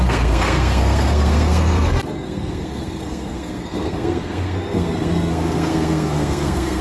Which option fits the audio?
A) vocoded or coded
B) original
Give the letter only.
A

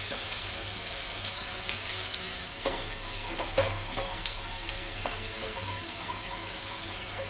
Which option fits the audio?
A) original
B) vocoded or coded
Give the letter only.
B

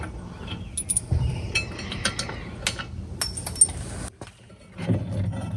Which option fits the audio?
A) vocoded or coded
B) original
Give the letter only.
B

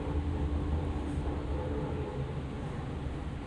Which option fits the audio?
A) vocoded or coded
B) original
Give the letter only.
B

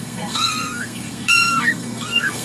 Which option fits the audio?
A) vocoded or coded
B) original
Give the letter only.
A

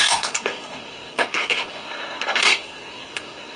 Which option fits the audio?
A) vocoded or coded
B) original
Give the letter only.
A